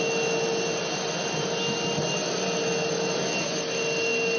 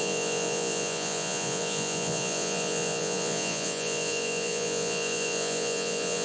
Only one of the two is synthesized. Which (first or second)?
second